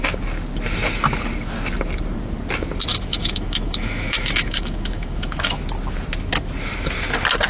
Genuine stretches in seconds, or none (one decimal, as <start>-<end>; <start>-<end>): 0.0-2.9; 5.6-7.5